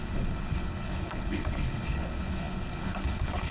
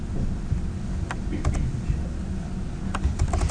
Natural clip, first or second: second